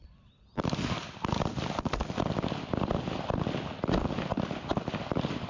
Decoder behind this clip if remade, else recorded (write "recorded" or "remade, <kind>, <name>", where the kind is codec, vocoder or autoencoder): recorded